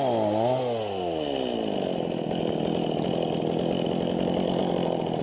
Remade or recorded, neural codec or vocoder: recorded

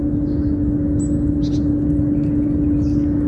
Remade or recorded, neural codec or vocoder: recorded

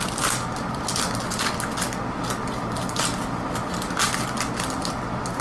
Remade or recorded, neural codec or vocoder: recorded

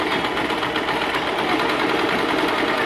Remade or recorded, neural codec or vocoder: recorded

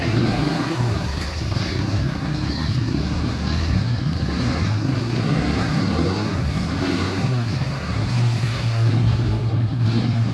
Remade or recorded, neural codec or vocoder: remade, codec, SNAC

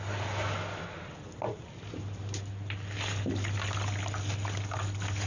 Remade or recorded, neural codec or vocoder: recorded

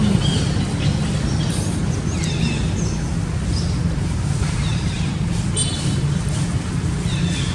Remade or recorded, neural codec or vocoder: recorded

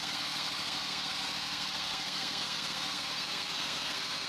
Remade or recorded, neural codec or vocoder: remade, codec, SNAC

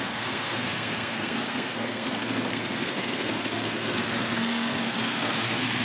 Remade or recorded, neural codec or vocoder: remade, codec, SNAC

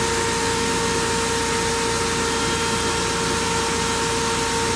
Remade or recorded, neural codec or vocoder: recorded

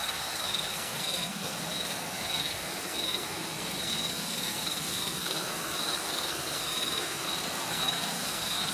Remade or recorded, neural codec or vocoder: remade, codec, SNAC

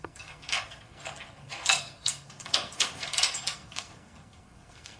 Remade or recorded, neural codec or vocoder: remade, codec, SNAC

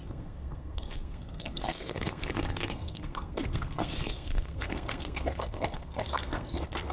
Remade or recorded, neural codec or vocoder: remade, codec, SNAC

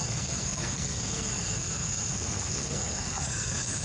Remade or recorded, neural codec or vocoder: remade, codec, SNAC